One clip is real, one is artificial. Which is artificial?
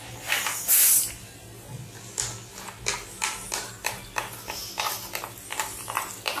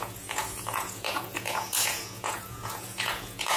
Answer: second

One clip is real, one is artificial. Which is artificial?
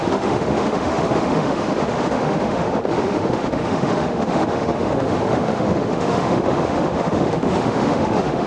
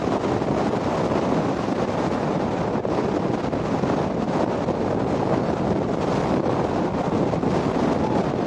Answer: first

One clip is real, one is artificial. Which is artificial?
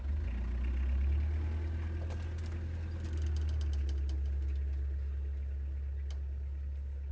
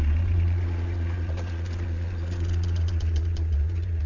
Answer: second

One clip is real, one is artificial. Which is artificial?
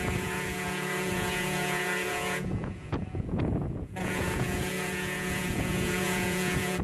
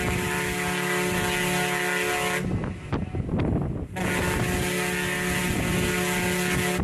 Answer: first